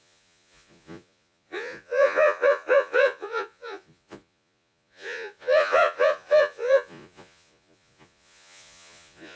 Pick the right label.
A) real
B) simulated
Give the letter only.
B